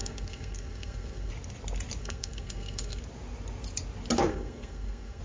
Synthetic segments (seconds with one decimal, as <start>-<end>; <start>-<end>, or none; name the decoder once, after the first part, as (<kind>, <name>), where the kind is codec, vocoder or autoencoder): 0.0-1.3 (codec, SNAC); 2.0-3.0; 4.3-5.2